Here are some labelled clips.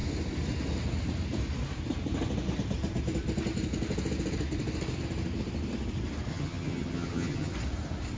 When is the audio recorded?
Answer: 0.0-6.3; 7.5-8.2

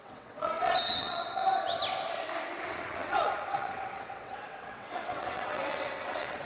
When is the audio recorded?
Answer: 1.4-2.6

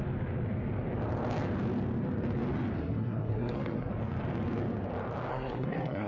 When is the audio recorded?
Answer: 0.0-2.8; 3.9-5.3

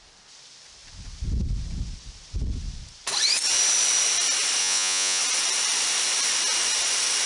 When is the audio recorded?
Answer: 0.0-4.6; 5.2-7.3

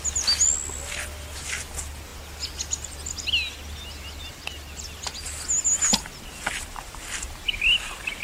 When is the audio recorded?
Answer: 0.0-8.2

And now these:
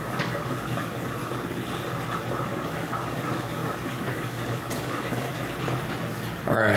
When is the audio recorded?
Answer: 1.2-2.4; 5.3-6.8